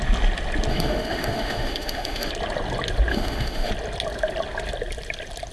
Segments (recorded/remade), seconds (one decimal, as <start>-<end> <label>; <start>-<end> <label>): 0.0-0.7 recorded; 0.7-2.3 remade; 2.3-3.1 recorded; 3.1-3.7 remade; 3.7-5.5 recorded